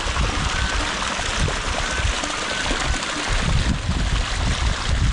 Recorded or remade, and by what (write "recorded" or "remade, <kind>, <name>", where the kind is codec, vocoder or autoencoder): recorded